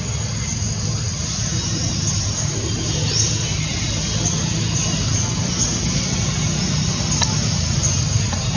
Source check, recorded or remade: recorded